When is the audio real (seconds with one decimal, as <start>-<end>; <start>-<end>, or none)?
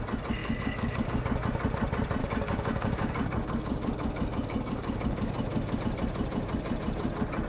0.0-0.4; 1.1-2.2; 5.8-7.5